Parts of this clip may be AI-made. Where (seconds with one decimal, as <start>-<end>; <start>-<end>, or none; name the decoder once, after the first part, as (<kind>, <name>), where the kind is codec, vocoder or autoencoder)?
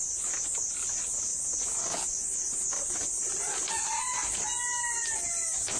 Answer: none